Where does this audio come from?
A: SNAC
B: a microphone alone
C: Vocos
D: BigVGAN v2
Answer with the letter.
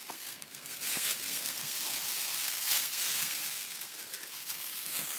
A